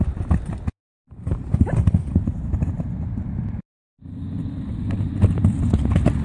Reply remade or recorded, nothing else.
recorded